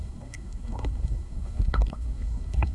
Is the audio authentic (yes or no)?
no